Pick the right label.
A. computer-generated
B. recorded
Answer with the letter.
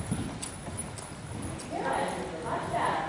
B